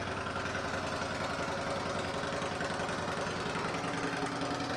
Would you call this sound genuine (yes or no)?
yes